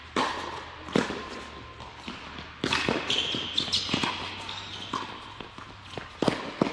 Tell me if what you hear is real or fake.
real